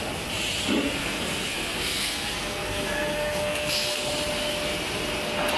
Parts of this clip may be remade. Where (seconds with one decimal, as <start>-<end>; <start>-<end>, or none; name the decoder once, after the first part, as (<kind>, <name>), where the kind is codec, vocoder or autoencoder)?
1.0-4.1 (codec, SNAC)